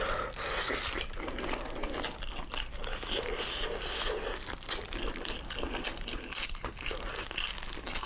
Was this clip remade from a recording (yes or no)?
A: no